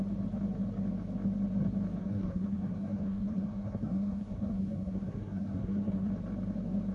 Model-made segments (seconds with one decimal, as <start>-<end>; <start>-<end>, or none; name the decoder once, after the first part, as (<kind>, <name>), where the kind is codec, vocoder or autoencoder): 2.0-6.1 (codec, SNAC)